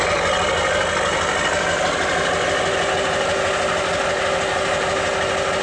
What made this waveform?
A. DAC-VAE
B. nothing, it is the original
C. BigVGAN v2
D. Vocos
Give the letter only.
B